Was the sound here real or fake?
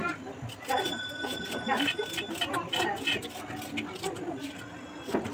real